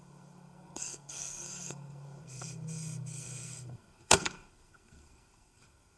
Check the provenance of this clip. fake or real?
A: fake